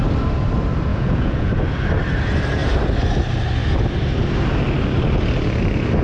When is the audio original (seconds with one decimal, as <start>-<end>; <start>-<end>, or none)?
0.0-0.9; 1.5-6.0